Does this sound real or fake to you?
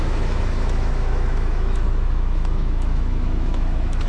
fake